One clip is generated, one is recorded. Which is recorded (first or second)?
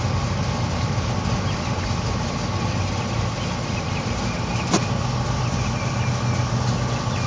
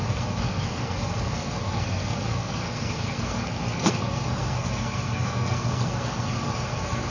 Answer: first